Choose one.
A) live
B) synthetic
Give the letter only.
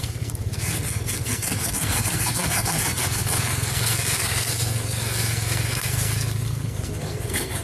B